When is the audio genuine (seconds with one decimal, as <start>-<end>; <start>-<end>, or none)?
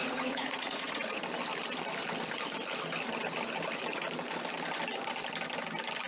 1.2-6.1